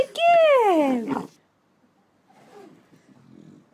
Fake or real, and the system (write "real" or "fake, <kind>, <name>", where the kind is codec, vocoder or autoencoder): real